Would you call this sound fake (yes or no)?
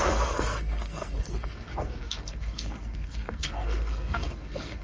yes